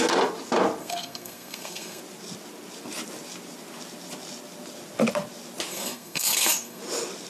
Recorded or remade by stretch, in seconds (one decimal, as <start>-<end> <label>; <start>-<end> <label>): 0.0-0.8 recorded; 0.8-2.0 remade; 2.0-5.7 recorded; 5.7-6.8 remade; 6.8-7.3 recorded